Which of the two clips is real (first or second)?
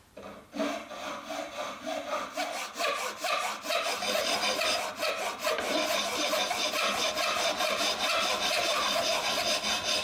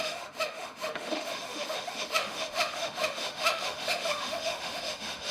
first